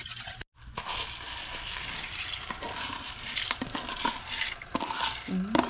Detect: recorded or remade recorded